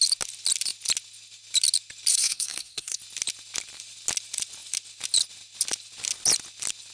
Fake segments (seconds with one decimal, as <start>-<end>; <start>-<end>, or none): 2.1-3.0